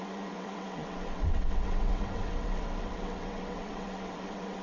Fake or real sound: fake